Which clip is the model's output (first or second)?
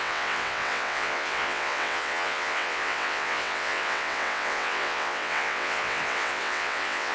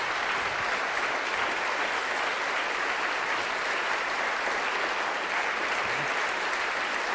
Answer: first